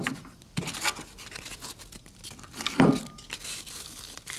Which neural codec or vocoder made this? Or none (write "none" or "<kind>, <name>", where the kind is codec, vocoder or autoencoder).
none